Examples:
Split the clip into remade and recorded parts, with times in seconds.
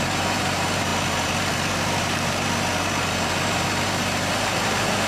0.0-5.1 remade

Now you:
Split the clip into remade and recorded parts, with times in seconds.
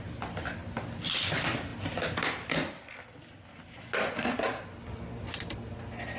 0.0-6.2 recorded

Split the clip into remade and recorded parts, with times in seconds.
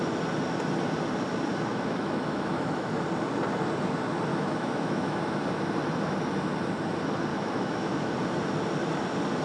0.0-1.7 recorded; 1.7-2.9 remade; 2.9-4.3 recorded; 4.3-5.2 remade; 5.2-7.3 recorded; 7.3-8.1 remade; 8.1-9.4 recorded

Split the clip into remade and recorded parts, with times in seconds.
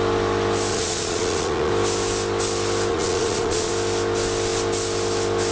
0.0-0.7 recorded; 0.7-1.7 remade; 1.7-2.9 recorded; 2.9-3.7 remade; 3.7-5.5 recorded